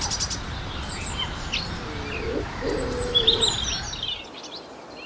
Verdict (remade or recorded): recorded